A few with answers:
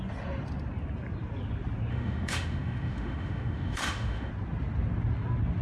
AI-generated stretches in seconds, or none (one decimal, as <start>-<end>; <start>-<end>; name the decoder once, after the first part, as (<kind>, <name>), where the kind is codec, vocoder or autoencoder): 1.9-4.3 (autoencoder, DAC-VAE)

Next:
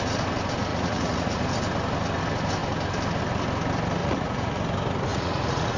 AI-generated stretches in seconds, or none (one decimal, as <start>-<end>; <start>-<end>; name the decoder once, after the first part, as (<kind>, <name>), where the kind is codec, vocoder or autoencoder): 0.7-1.4 (vocoder, Vocos); 4.0-4.6; 5.1-5.8

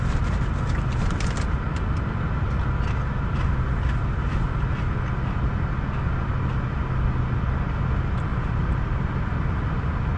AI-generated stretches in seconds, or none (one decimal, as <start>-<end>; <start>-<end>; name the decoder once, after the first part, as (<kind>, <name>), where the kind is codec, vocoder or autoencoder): 8.3-9.2 (vocoder, BigVGAN v2)

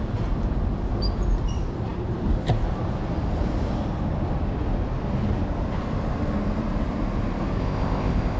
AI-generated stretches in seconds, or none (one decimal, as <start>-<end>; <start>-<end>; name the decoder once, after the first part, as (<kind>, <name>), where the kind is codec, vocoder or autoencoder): 7.6-8.4 (codec, ZipCodec)